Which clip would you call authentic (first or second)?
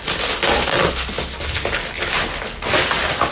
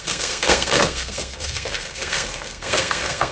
first